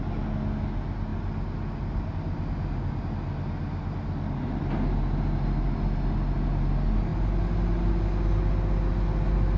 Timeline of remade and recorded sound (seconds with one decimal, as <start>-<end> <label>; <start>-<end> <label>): 0.0-9.6 recorded